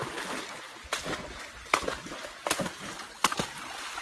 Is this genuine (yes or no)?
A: yes